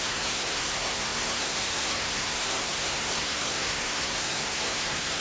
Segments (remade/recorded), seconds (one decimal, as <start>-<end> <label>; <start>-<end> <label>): 0.0-5.2 remade